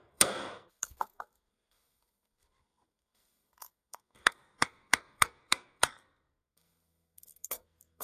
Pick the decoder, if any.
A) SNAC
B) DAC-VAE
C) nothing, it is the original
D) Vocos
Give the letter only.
A